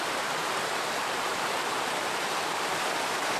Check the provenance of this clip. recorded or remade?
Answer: remade